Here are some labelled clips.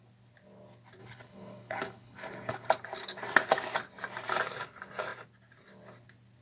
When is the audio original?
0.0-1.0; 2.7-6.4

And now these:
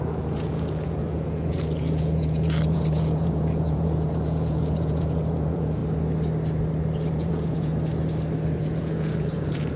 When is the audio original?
5.8-7.1; 7.7-8.6

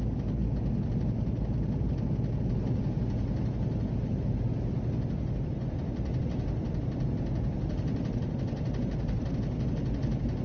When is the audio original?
0.0-10.4

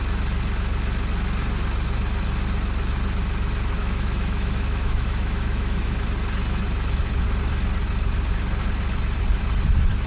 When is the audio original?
0.0-3.8; 6.0-10.1